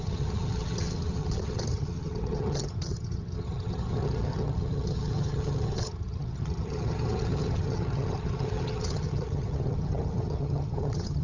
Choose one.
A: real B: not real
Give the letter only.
B